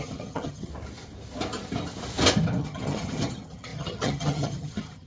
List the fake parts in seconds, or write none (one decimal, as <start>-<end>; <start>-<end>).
0.0-0.7; 2.6-5.1